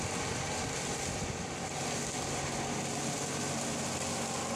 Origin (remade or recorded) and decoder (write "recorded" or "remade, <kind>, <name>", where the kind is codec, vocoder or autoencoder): recorded